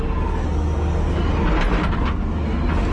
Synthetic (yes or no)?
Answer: no